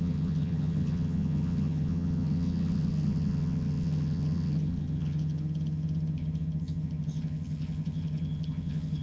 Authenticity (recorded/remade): remade